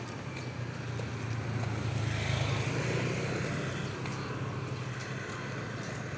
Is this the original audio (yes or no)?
yes